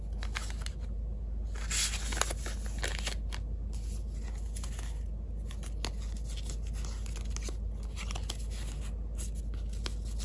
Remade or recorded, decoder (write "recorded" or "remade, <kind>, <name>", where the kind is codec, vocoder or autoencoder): recorded